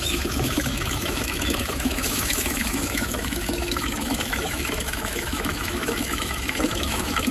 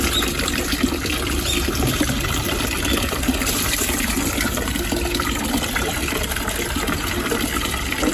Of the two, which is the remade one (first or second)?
first